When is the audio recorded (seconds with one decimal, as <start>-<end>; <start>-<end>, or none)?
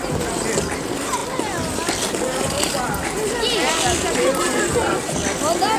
0.0-1.2; 4.7-5.8